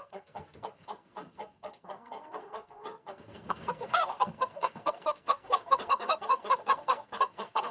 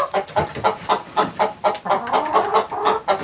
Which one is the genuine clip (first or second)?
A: second